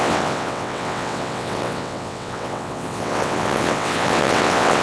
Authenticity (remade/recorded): remade